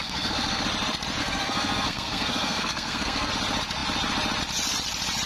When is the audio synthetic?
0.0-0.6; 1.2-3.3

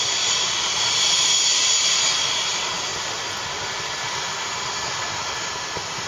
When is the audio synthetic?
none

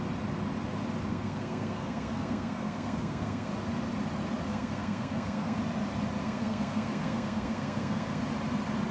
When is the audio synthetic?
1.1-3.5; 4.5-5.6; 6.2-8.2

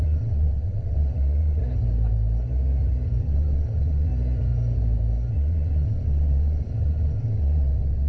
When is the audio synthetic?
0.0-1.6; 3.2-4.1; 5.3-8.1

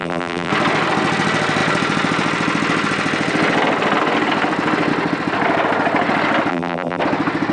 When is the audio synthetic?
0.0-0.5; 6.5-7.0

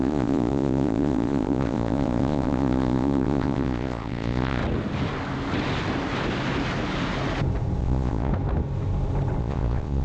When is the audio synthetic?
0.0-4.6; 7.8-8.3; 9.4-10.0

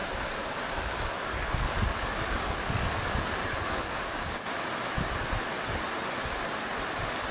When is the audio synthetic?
0.0-4.4

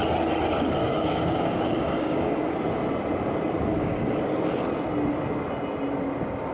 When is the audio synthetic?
0.8-2.5; 3.7-4.2